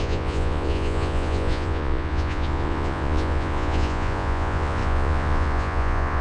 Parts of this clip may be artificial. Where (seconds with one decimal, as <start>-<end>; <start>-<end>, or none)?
0.0-6.2